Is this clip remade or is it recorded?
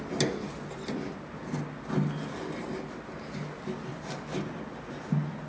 recorded